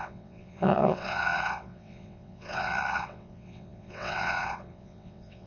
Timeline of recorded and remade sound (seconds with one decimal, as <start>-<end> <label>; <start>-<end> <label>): 0.0-5.5 remade